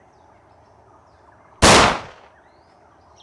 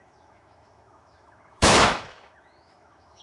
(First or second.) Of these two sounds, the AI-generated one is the second